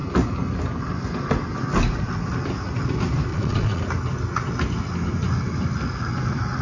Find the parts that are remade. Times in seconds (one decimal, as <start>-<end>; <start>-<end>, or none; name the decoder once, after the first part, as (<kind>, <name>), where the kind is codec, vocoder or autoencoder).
3.3-3.8 (vocoder, Vocos)

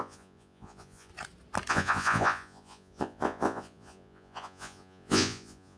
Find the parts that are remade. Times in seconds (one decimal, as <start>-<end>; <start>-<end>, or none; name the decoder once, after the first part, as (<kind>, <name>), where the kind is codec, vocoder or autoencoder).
0.0-1.1 (vocoder, Vocos); 1.7-5.8

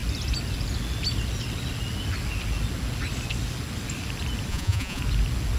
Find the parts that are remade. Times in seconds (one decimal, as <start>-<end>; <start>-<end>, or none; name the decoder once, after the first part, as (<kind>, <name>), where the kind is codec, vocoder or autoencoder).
4.5-5.0 (vocoder, Vocos)

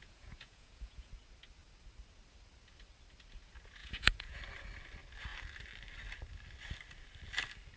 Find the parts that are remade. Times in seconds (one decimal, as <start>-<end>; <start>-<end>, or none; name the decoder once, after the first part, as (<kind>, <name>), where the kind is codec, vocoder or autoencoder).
0.0-1.1 (vocoder, Vocos); 3.8-4.4

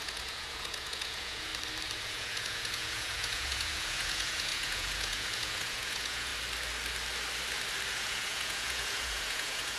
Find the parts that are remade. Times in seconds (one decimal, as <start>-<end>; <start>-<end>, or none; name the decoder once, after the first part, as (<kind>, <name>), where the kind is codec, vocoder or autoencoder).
0.0-1.5 (vocoder, Vocos); 2.0-6.3; 7.9-9.8

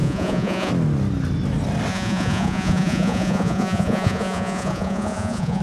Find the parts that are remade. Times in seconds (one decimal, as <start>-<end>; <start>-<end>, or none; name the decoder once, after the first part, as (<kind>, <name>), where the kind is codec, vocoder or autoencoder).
0.0-0.7 (vocoder, Vocos); 1.9-5.6

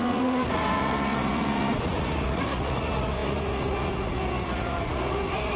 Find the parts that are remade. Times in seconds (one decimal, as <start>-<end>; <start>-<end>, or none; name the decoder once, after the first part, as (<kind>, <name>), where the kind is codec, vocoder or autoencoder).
0.0-5.6 (vocoder, Vocos)